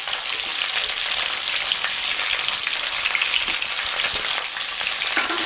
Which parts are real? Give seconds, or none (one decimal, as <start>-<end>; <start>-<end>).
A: 0.0-5.5